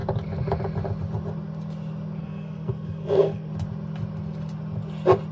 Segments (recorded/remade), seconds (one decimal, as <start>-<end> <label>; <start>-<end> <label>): 0.0-2.2 recorded; 2.2-3.5 remade; 3.5-5.3 recorded